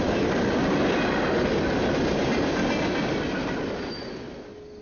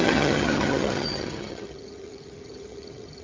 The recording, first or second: first